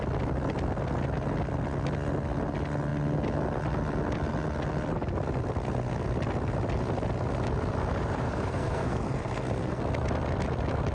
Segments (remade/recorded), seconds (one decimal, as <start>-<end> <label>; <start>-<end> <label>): 0.0-8.2 recorded; 8.2-9.8 remade; 9.8-10.9 recorded